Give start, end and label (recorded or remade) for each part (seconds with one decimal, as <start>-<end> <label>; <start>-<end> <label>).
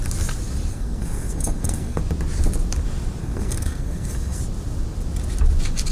0.0-0.7 recorded; 0.7-2.0 remade; 2.0-3.2 recorded; 3.2-4.4 remade; 4.4-5.9 recorded